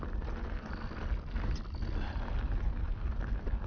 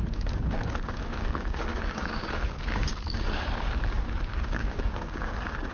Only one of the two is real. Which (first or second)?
first